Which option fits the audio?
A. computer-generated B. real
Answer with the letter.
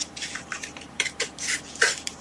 A